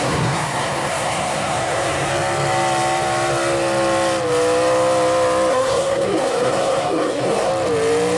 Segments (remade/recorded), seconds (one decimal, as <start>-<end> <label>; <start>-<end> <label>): 0.0-2.1 remade; 2.1-5.5 recorded; 5.5-7.5 remade; 7.5-8.2 recorded